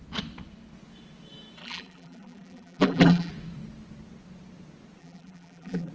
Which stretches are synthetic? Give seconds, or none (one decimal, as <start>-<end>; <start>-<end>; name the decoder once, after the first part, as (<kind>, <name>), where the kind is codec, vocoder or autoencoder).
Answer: 1.6-3.3 (vocoder, BigVGAN v2); 5.0-5.9